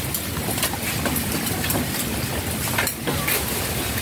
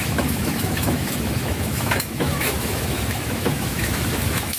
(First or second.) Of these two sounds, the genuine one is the first